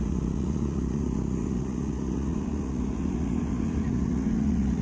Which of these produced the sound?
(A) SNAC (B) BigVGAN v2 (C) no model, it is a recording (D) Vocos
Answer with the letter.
D